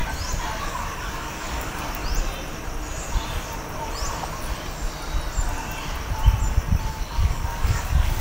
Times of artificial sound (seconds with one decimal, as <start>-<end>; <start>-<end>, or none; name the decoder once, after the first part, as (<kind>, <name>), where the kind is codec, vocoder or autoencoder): 0.6-2.0 (codec, DAC); 6.9-8.2